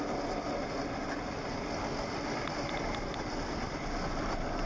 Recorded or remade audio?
recorded